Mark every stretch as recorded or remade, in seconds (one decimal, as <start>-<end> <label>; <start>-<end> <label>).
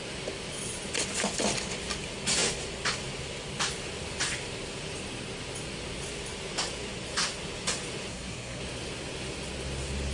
0.0-8.1 recorded; 8.1-8.6 remade; 8.6-10.1 recorded